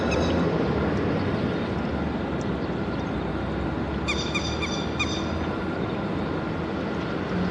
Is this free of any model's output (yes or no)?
yes